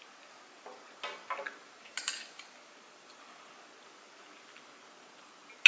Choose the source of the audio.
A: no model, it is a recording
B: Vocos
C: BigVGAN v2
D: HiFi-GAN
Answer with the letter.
A